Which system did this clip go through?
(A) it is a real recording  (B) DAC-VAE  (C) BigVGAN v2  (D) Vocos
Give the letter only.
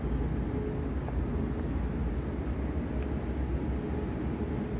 A